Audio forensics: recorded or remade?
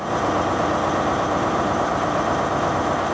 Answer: recorded